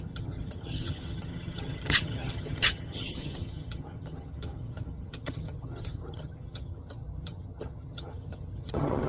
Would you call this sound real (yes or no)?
no